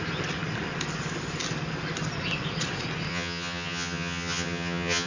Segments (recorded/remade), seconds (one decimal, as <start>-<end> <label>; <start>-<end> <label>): 0.0-3.1 recorded; 3.1-5.1 remade